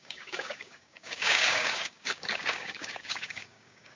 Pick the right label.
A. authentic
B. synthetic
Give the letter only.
B